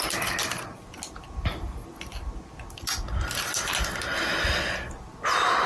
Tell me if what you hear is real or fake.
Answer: real